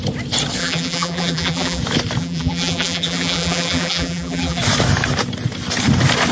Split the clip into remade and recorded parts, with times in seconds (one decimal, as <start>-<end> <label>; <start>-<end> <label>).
0.0-0.6 recorded; 0.6-1.8 remade; 1.8-2.2 recorded; 2.2-4.6 remade; 4.6-6.3 recorded